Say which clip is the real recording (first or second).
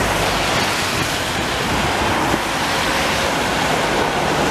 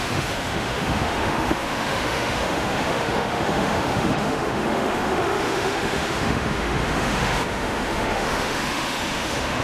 first